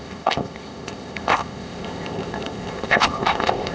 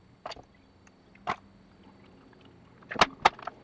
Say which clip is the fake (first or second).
first